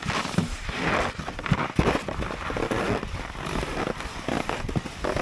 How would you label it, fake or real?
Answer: real